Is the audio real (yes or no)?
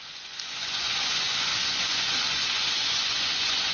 no